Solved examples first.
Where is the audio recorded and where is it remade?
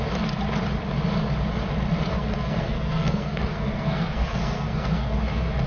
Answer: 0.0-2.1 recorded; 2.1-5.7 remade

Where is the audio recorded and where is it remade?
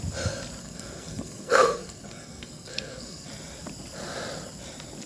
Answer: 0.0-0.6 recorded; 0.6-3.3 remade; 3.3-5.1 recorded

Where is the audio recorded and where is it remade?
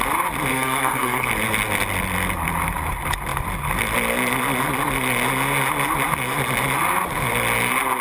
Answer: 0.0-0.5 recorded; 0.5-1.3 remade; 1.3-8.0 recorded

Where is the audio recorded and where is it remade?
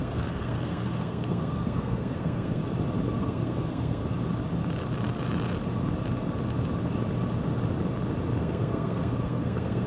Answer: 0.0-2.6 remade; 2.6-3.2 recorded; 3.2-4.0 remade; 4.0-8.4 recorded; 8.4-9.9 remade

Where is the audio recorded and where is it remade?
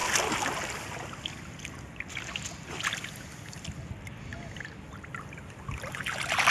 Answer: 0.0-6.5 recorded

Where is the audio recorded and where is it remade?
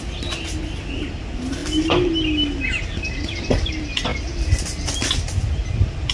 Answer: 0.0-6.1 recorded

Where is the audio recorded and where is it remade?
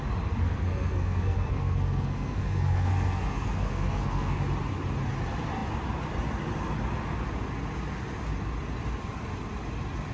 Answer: 0.0-0.4 recorded; 0.4-4.4 remade; 4.4-10.1 recorded